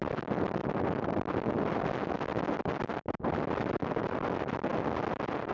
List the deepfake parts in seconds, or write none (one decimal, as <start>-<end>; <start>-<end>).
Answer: none